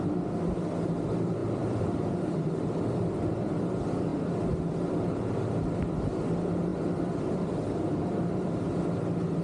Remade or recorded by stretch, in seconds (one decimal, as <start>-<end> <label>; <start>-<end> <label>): 0.0-4.1 remade; 4.1-4.7 recorded; 4.7-9.4 remade